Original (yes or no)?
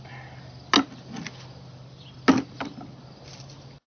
yes